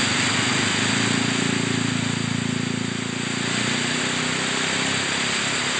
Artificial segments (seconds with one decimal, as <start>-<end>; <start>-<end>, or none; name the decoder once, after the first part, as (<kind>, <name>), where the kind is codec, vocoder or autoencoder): none